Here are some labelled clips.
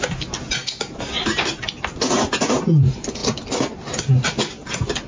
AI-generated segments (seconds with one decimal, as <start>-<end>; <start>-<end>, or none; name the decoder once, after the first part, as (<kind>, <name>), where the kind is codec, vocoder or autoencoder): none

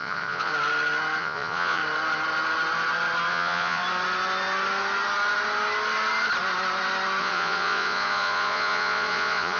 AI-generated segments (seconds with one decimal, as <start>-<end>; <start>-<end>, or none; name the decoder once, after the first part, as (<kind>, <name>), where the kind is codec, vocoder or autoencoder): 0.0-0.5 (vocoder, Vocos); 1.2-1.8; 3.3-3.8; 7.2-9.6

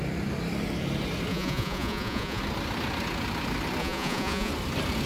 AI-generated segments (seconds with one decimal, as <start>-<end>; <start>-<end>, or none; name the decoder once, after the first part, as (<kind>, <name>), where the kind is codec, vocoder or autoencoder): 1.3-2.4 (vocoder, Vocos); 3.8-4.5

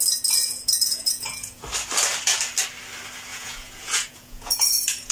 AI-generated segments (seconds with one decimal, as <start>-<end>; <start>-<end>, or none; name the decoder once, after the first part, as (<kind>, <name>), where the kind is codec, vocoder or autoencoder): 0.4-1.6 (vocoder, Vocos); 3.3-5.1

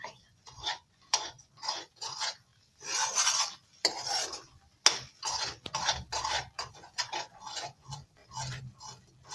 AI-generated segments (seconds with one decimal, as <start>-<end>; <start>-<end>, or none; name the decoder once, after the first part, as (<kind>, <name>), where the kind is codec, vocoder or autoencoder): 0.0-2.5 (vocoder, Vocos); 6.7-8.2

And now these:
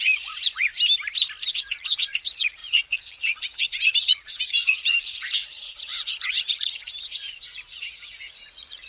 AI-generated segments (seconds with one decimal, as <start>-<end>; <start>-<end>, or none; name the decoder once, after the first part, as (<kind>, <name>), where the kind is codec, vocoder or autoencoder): 0.0-0.7 (vocoder, Vocos); 1.5-8.9

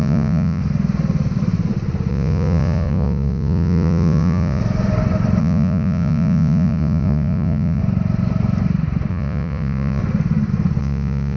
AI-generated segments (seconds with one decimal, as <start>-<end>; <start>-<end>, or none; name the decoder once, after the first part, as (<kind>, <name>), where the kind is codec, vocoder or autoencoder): 0.0-0.6 (vocoder, Vocos); 2.1-4.6; 5.4-7.8; 9.1-10.0; 10.8-11.4